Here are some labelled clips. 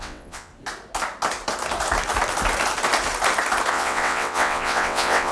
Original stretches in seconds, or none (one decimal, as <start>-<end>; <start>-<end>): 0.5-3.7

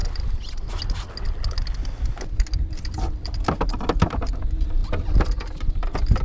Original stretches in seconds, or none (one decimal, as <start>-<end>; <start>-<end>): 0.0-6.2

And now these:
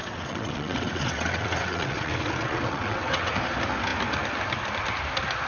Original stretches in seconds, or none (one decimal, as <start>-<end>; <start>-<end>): 3.3-5.5